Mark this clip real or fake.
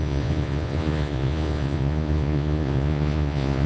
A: fake